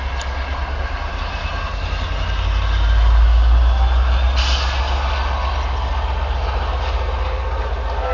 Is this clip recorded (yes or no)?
yes